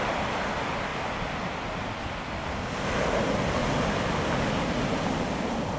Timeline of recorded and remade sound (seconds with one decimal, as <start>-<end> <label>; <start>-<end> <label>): 0.0-5.8 recorded